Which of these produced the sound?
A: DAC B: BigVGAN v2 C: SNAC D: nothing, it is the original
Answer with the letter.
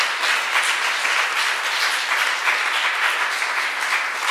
D